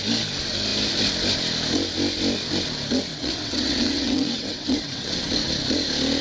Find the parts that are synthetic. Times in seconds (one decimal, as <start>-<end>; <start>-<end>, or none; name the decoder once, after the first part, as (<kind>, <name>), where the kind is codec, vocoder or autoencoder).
3.1-5.5 (vocoder, WaveNeXt)